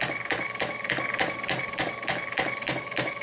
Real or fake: real